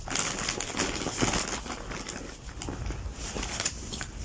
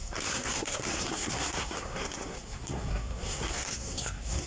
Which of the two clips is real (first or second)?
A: first